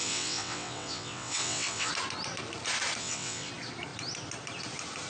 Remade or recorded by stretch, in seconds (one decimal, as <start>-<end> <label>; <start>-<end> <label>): 0.0-1.9 remade; 1.9-3.0 recorded; 3.0-3.5 remade; 3.5-5.1 recorded